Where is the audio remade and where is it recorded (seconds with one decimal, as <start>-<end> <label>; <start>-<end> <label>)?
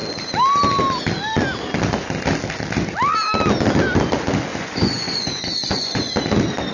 0.0-4.5 recorded; 4.5-6.1 remade; 6.1-6.7 recorded